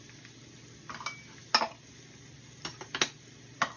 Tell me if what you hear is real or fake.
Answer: real